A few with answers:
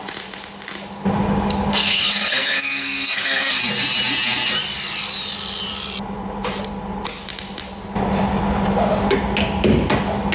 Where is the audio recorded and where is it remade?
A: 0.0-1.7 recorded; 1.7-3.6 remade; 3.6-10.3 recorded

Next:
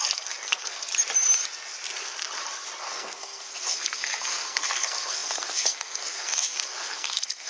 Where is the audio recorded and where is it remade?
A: 0.0-0.9 remade; 0.9-2.8 recorded; 2.8-7.5 remade

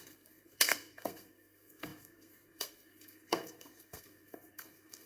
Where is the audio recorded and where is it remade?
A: 0.0-5.1 remade

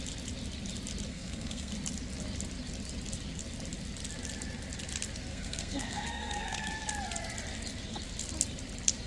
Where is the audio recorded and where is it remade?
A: 0.0-1.1 recorded; 1.1-1.7 remade; 1.7-5.3 recorded; 5.3-6.7 remade; 6.7-9.1 recorded